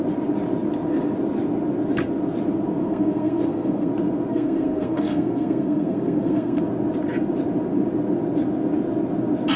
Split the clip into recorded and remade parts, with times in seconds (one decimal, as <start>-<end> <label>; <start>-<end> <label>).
0.0-2.8 recorded; 2.8-3.9 remade; 3.9-4.3 recorded; 4.3-6.6 remade; 6.6-9.6 recorded